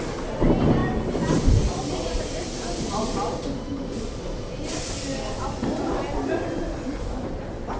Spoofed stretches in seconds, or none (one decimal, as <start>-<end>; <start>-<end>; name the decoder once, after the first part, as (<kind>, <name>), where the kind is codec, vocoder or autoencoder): none